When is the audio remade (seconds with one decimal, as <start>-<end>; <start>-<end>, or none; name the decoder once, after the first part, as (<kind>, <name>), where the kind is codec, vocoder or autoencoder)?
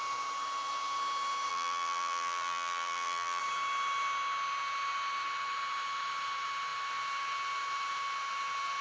1.5-3.4 (vocoder, BigVGAN v2)